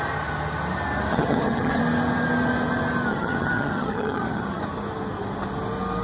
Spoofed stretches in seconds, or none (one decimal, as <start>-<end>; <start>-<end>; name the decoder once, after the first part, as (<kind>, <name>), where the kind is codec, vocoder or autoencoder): 1.1-1.8 (vocoder, HiFi-GAN); 3.1-4.6